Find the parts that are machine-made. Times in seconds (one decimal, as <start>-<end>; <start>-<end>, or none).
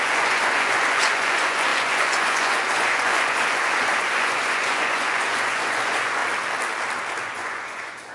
0.0-6.2; 7.2-8.1